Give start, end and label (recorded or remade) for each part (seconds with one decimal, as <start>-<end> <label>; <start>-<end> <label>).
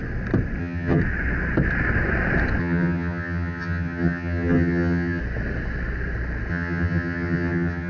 0.0-0.6 recorded; 0.6-1.0 remade; 1.0-2.6 recorded; 2.6-5.2 remade; 5.2-6.5 recorded; 6.5-7.9 remade